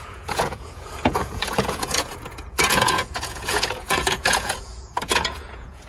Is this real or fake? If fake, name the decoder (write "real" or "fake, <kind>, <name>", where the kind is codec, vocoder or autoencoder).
fake, vocoder, Vocos